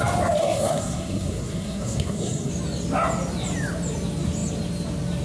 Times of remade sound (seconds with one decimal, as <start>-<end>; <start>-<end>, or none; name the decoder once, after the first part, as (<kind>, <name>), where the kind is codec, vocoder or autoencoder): 0.4-2.5 (codec, SNAC)